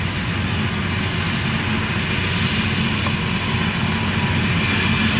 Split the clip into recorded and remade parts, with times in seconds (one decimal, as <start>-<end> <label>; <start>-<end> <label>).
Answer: 0.0-5.2 recorded